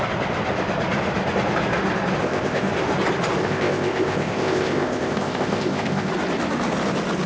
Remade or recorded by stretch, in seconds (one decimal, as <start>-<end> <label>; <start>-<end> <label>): 0.0-2.2 recorded; 2.2-2.7 remade; 2.7-3.4 recorded; 3.4-6.1 remade; 6.1-7.3 recorded